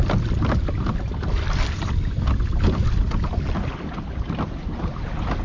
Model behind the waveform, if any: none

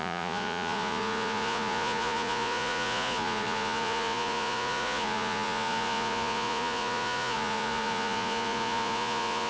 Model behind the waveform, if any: vocoder, Vocos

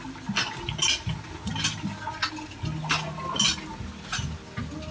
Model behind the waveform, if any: none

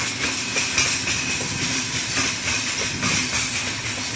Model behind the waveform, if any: none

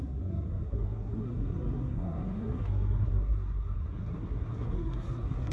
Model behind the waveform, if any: codec, SNAC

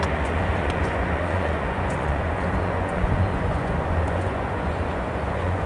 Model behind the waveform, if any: vocoder, Vocos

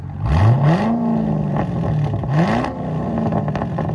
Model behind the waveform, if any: none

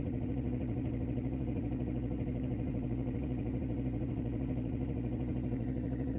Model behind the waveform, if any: vocoder, Vocos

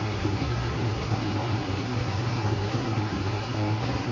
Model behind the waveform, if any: codec, SNAC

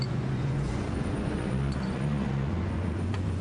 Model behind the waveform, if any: vocoder, Vocos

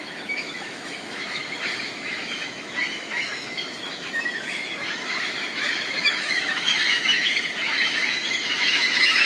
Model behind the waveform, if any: autoencoder, DAC-VAE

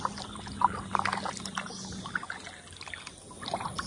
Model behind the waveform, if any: none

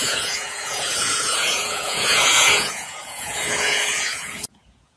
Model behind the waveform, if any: vocoder, Vocos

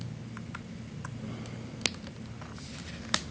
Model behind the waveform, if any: none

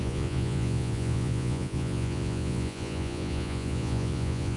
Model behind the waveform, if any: vocoder, Vocos